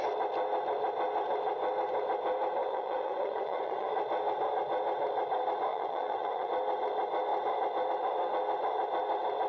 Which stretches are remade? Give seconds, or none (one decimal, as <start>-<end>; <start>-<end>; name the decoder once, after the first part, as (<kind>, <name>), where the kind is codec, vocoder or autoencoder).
2.6-3.9 (vocoder, WaveNeXt); 5.7-6.5